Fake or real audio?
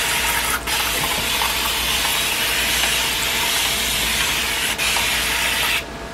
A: real